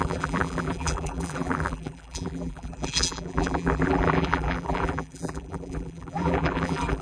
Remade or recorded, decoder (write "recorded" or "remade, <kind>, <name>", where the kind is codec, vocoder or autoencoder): remade, vocoder, BigVGAN v2